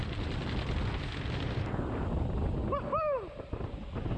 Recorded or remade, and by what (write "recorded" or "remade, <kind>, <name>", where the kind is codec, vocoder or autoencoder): recorded